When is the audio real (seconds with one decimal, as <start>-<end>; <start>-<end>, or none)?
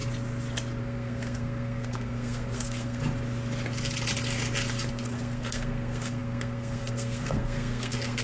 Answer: 0.0-0.8; 3.0-4.9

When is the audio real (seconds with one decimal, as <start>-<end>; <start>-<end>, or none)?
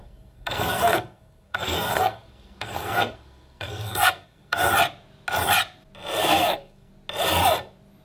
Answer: 4.7-6.2; 6.9-8.0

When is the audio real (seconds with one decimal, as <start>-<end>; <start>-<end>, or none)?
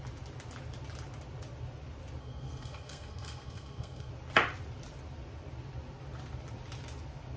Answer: 0.0-2.2; 4.1-7.4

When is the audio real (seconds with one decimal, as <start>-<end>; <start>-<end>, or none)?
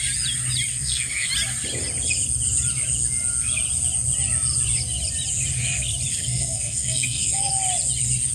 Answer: 0.0-0.7; 1.3-6.1; 7.5-8.3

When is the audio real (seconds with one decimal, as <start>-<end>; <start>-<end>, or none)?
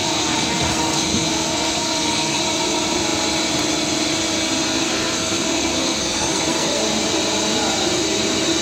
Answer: 2.4-4.7; 6.8-8.6